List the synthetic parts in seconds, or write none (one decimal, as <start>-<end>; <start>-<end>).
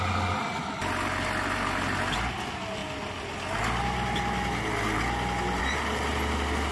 none